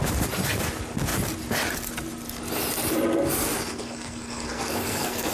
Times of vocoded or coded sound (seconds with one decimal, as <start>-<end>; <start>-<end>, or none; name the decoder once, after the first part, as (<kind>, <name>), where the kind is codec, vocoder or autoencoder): 3.7-5.3 (codec, SNAC)